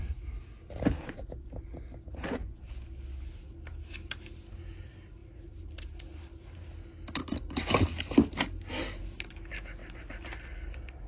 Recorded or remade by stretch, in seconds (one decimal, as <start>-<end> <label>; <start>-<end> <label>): 0.0-11.1 recorded

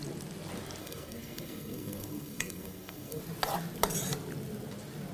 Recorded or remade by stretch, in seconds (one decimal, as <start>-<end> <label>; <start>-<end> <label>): 0.0-0.8 recorded; 0.8-3.2 remade; 3.2-5.1 recorded